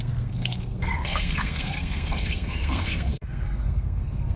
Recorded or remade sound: remade